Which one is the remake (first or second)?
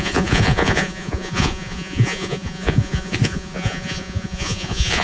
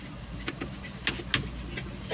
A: first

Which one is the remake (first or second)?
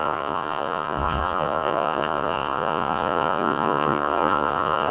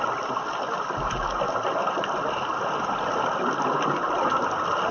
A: first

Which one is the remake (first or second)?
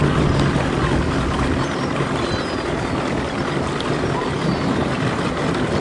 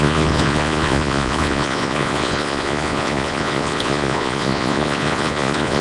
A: second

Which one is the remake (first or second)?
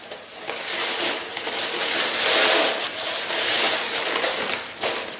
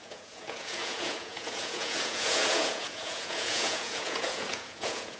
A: second